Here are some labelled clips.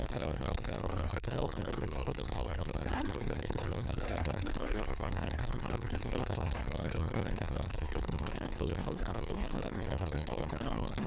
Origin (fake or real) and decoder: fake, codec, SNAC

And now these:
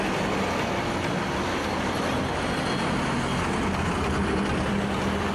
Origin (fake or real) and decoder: real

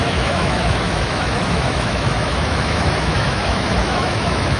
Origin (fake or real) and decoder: fake, autoencoder, DAC-VAE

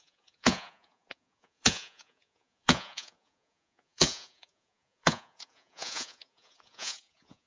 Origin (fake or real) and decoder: fake, vocoder, Vocos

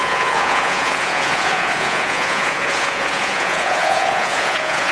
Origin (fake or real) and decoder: fake, vocoder, Vocos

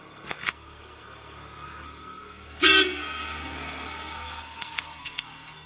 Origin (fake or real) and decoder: fake, codec, SNAC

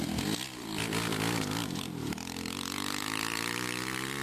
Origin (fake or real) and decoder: fake, vocoder, BigVGAN v2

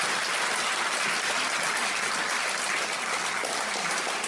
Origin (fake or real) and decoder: real